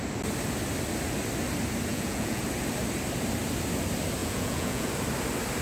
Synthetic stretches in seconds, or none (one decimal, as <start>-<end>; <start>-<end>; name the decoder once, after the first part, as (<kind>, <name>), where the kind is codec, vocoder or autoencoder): 1.9-2.4 (vocoder, Vocos); 4.2-4.9